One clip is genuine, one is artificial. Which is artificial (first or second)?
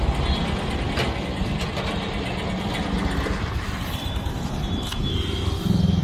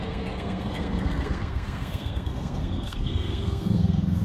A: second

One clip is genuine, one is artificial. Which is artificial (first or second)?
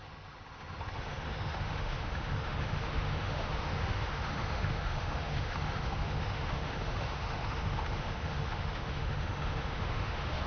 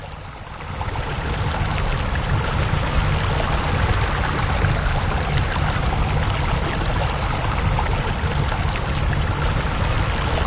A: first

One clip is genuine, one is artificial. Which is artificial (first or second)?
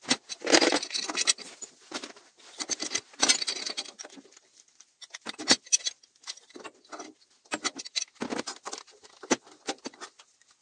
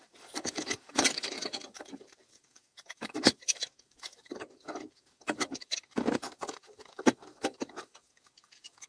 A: second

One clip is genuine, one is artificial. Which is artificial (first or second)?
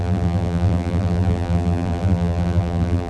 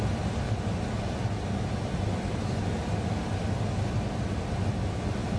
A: first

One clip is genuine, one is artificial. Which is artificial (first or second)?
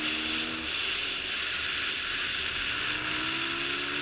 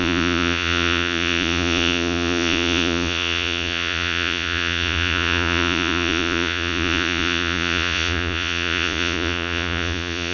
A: second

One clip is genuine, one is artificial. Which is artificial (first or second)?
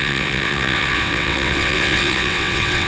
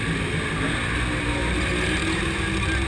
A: first